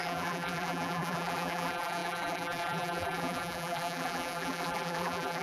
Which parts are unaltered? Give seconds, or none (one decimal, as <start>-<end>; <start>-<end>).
none